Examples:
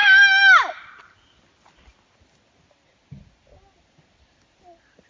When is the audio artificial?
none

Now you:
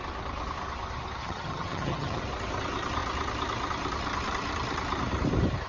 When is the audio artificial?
1.2-2.2 (vocoder, HiFi-GAN)

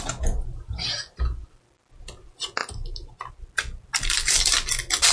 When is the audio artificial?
none

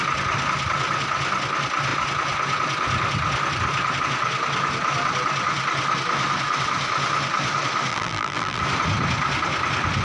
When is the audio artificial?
7.9-8.6 (vocoder, BigVGAN v2)

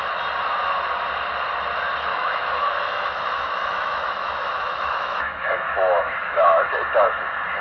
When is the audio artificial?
2.1-6.7 (autoencoder, DAC-VAE)

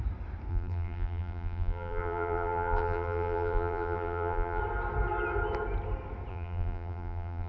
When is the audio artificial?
0.5-4.6 (vocoder, BigVGAN v2); 6.3-7.5

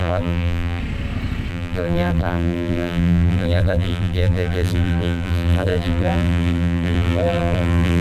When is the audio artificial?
0.0-0.8 (vocoder, BigVGAN v2); 1.5-8.0